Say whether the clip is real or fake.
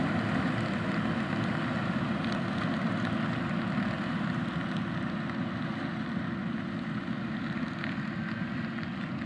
real